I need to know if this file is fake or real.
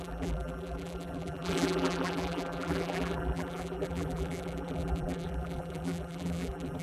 fake